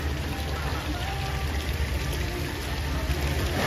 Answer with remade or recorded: recorded